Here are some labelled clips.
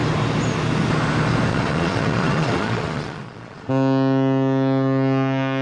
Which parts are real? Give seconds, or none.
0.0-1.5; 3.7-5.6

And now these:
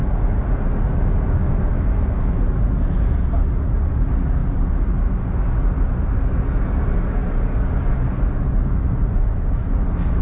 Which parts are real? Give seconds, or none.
0.0-7.2; 9.7-10.2

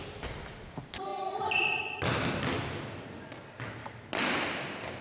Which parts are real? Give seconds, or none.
0.0-5.0

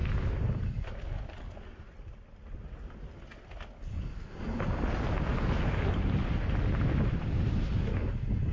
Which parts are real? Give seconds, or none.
0.0-8.5

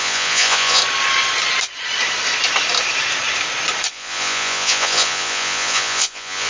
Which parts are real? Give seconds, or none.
0.8-3.9

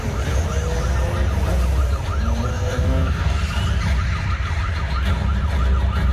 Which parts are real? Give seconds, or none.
0.0-2.5; 3.4-6.1

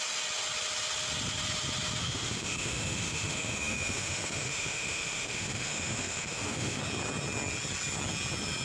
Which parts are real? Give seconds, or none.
0.0-2.0; 6.8-8.6

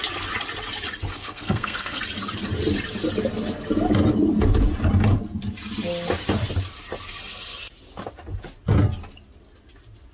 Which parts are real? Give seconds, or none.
0.0-1.1; 2.0-10.1